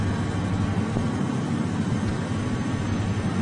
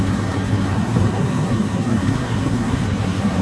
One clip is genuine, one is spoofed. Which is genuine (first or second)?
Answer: first